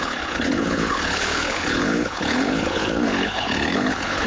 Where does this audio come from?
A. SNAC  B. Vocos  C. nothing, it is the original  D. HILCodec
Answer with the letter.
D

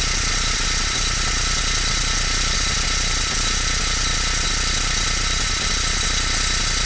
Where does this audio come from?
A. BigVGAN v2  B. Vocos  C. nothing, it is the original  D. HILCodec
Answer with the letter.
C